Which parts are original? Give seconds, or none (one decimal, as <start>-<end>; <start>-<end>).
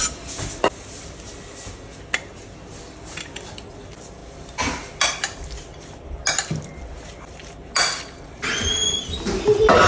0.0-9.9